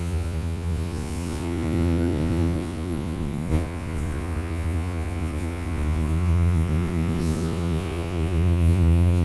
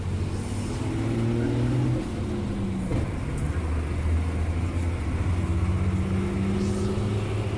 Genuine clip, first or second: second